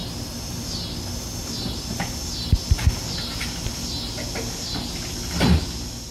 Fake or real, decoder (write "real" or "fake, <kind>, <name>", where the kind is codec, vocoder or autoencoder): real